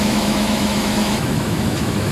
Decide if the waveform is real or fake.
fake